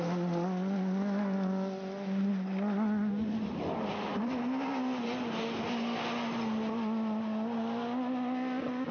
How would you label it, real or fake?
real